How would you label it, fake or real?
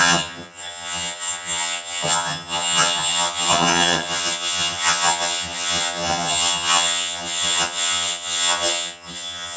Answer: fake